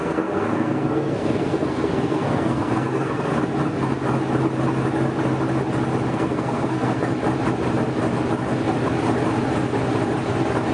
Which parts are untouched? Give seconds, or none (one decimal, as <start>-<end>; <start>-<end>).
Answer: 3.3-6.1; 7.1-10.7